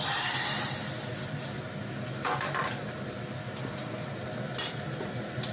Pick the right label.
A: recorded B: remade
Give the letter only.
A